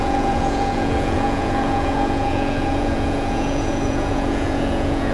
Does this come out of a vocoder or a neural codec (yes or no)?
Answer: yes